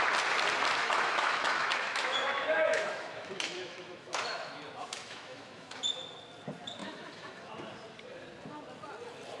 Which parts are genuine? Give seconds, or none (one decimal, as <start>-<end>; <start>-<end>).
0.0-0.8; 4.6-5.0; 5.7-6.8; 7.5-9.4